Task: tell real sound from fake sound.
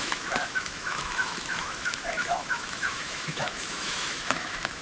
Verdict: fake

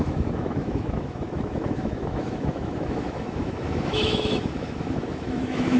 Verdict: fake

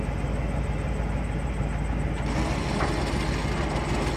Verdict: real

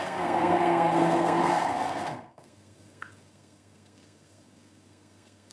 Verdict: fake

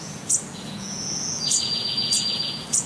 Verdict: fake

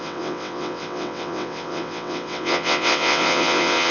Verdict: fake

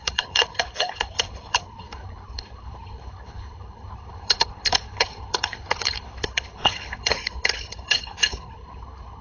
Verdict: fake